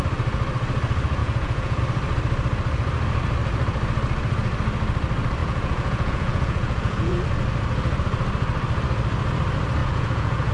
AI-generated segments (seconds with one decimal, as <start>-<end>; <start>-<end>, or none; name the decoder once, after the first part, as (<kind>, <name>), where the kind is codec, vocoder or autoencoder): 1.2-1.8 (vocoder, Vocos); 5.4-7.2; 9.8-10.5